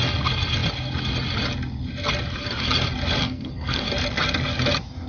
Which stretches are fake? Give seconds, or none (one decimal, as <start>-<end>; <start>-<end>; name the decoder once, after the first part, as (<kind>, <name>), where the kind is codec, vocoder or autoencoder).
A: 3.2-3.8 (codec, SNAC)